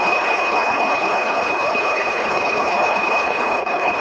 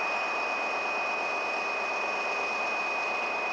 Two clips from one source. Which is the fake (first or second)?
first